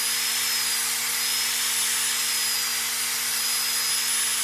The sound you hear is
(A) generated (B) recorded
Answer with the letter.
B